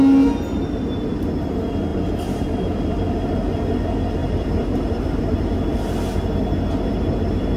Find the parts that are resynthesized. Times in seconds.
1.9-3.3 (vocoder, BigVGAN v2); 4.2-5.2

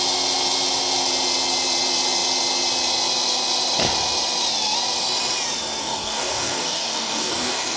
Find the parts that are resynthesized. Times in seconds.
5.8-7.8 (codec, DAC)

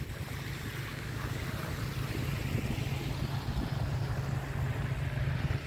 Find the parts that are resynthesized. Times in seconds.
0.9-1.4 (codec, DAC)

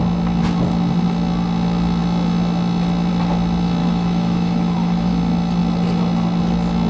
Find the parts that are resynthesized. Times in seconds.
3.8-5.1 (autoencoder, DAC-VAE)

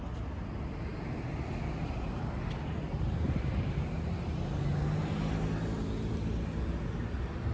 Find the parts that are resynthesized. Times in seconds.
none

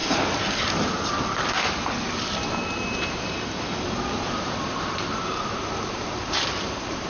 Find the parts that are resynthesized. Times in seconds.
0.0-1.1 (vocoder, BigVGAN v2); 2.4-7.1